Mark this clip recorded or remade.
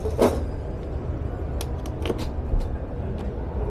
recorded